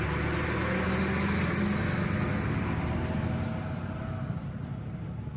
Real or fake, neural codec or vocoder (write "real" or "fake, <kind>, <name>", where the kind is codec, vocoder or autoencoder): real